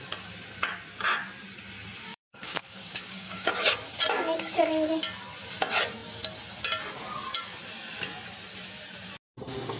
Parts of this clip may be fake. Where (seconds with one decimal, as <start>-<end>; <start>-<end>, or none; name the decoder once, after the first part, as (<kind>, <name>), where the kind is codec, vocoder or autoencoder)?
2.1-3.5 (codec, DAC)